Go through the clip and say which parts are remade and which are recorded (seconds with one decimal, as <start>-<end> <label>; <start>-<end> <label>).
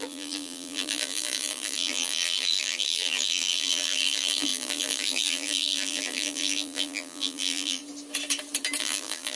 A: 0.0-7.8 remade; 7.8-8.8 recorded; 8.8-9.4 remade